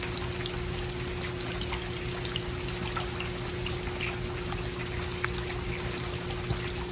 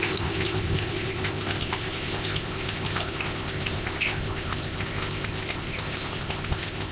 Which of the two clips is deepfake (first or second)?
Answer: second